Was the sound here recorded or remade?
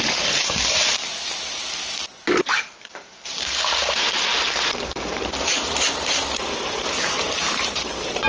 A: remade